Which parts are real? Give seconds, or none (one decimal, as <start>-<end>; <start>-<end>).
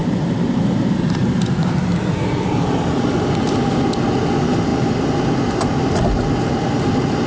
0.8-7.3